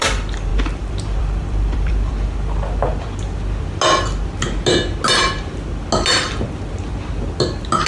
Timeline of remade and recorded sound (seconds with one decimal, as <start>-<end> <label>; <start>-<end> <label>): 0.0-0.5 recorded; 0.5-2.1 remade; 2.1-7.9 recorded